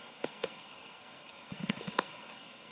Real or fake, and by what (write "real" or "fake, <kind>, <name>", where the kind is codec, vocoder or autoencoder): fake, codec, SNAC